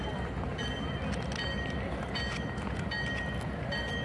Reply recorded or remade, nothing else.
recorded